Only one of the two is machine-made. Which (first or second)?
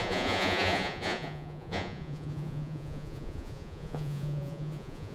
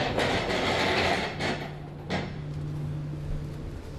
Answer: first